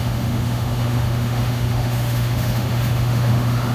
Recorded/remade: remade